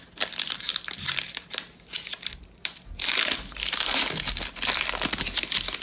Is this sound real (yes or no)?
yes